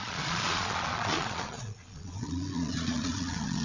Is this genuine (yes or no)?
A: no